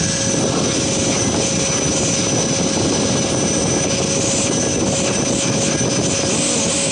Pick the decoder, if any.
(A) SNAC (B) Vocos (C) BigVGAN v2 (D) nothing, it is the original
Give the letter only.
D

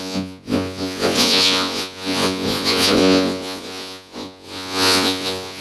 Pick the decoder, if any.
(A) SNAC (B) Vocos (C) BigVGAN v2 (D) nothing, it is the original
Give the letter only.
B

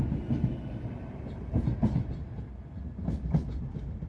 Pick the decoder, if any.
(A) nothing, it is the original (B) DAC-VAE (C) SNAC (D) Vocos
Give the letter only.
A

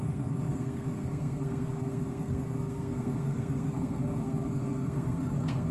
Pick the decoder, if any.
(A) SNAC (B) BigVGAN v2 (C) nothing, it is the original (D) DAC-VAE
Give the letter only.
A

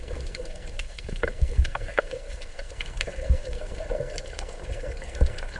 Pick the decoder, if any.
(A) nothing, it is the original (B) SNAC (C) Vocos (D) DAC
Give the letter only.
B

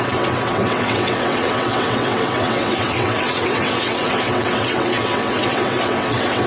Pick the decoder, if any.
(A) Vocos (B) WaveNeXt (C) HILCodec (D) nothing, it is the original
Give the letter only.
B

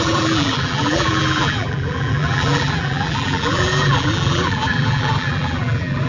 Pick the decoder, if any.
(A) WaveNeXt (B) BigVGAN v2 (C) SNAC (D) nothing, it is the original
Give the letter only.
B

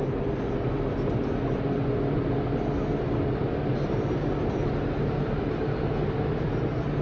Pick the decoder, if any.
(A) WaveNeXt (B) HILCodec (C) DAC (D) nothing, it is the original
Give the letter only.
D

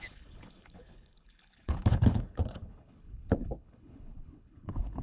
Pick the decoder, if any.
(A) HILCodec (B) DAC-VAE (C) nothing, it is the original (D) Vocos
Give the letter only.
A